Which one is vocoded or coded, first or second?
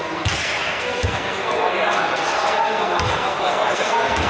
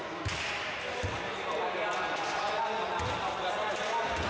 first